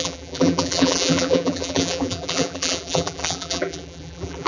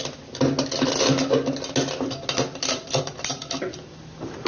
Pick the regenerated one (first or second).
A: first